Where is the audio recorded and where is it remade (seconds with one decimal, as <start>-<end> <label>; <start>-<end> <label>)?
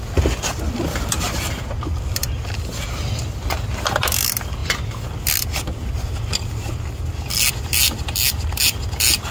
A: 0.0-9.3 recorded